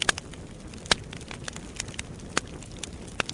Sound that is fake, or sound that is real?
real